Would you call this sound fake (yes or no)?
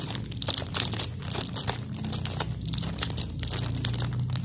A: no